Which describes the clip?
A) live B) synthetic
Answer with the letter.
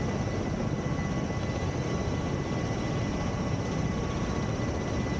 A